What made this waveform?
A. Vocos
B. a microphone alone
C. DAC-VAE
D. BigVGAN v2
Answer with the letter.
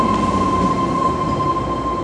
B